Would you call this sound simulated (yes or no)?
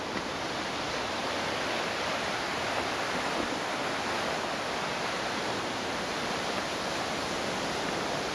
no